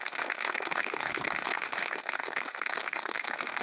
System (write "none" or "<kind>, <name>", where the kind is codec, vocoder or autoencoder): autoencoder, DAC-VAE